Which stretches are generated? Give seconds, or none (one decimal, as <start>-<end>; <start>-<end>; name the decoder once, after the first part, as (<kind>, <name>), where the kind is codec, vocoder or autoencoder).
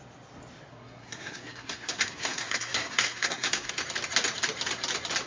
0.7-3.7 (codec, SNAC)